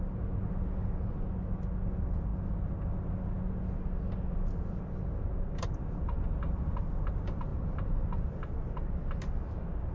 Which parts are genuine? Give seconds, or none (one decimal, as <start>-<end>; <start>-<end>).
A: 0.0-9.9

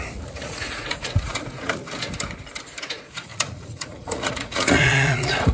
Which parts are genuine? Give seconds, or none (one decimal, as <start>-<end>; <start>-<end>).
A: 1.8-2.8